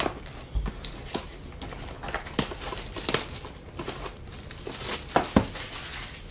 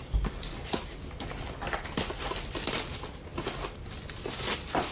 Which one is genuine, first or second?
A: first